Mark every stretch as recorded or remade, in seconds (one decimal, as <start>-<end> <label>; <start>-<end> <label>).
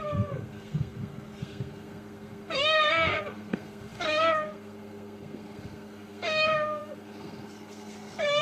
0.0-8.4 remade